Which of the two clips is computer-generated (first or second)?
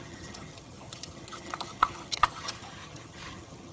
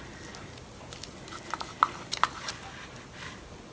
first